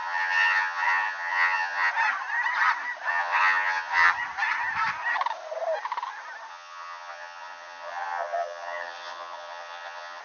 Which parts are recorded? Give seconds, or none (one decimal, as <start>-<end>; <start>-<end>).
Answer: 1.9-3.1; 4.1-6.5